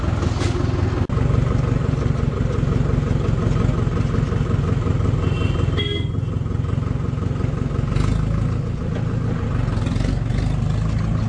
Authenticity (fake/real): real